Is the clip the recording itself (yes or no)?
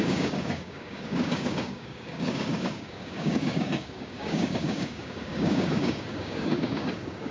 no